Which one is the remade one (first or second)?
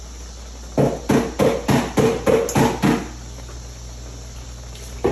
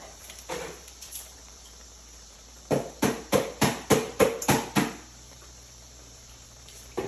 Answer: second